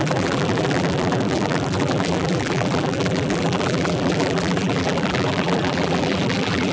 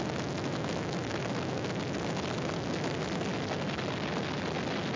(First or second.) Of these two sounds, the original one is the second